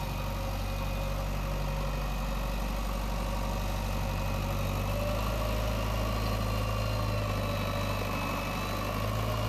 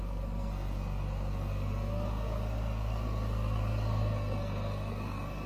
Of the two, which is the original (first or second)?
first